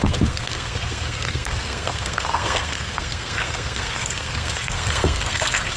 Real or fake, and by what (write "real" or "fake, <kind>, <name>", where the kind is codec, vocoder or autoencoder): fake, codec, SNAC